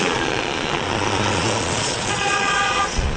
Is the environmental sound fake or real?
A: fake